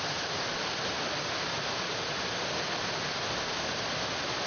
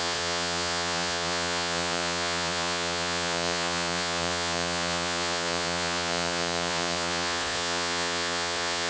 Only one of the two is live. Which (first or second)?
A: first